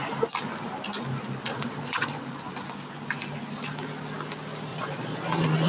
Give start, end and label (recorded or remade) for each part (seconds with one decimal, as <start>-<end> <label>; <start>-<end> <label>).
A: 0.0-1.5 recorded; 1.5-2.2 remade; 2.2-4.7 recorded; 4.7-5.7 remade